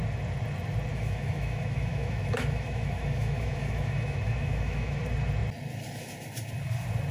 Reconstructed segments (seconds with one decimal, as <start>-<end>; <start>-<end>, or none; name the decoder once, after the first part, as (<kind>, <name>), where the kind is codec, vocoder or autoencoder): 0.9-5.0 (autoencoder, DAC-VAE)